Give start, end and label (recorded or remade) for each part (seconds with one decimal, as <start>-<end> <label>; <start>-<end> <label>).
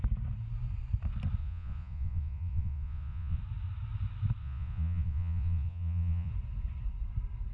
0.0-1.4 recorded; 1.4-3.4 remade; 3.4-4.4 recorded; 4.4-6.3 remade; 6.3-7.5 recorded